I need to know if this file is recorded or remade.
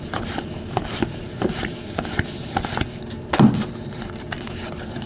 remade